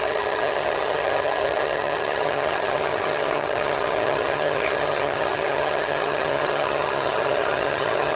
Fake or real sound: fake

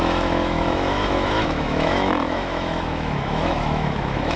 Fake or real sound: fake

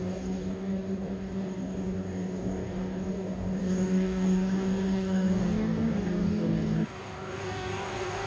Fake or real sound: fake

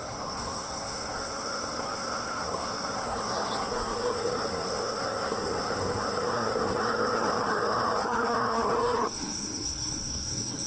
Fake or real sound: fake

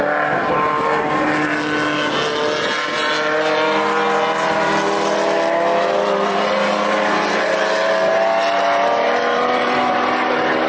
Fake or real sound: real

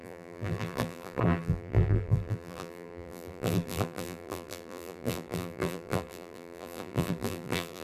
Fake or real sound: fake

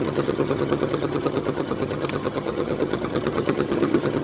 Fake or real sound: fake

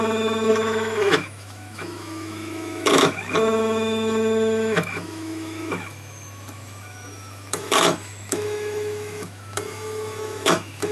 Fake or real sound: fake